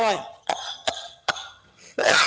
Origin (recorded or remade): remade